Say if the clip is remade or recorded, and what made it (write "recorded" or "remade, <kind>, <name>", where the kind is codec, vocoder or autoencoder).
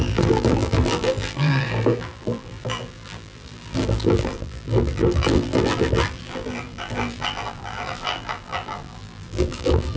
remade, vocoder, BigVGAN v2